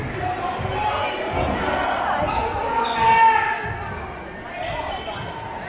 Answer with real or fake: real